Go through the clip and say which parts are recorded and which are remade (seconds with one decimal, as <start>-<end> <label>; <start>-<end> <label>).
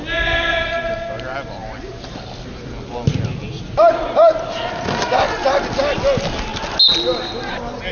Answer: 0.0-7.9 recorded